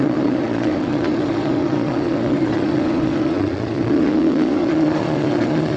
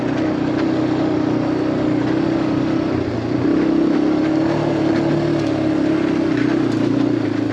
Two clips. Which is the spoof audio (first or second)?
first